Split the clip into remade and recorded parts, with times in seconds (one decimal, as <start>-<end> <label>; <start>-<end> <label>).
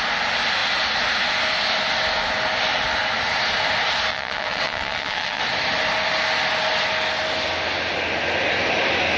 0.0-4.1 recorded; 4.1-5.4 remade; 5.4-9.2 recorded